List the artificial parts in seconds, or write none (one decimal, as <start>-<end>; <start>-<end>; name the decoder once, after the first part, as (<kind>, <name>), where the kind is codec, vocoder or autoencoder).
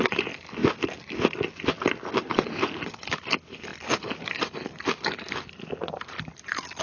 none